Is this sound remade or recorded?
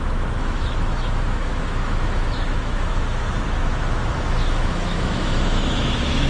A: remade